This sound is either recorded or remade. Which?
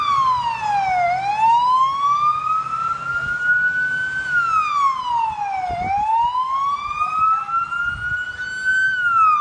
recorded